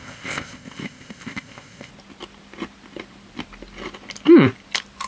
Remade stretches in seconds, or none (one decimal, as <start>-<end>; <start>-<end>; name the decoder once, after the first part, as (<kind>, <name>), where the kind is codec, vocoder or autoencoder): 0.0-1.9 (codec, ZipCodec)